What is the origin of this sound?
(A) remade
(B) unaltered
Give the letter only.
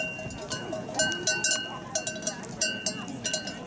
B